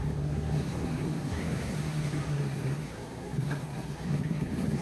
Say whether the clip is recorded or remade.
remade